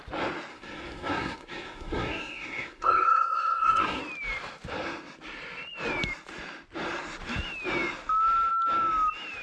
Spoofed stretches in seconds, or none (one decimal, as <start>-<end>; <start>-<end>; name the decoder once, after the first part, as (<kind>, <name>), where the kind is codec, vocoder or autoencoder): 0.5-4.0 (codec, SNAC)